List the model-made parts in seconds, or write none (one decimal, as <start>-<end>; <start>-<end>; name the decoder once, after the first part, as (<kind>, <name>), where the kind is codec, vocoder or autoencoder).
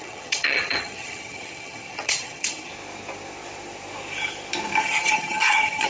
0.0-2.7 (vocoder, HiFi-GAN); 4.8-5.9